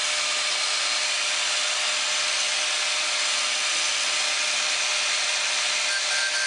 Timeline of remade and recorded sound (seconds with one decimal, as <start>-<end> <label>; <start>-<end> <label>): 0.0-6.5 recorded